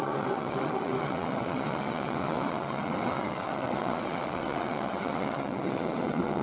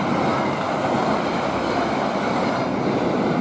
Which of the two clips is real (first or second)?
second